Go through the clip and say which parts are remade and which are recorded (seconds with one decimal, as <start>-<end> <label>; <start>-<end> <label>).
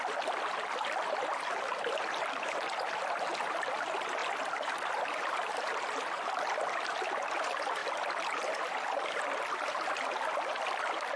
0.0-11.2 recorded